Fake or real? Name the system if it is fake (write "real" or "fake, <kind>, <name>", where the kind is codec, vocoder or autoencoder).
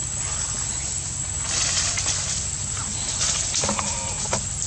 real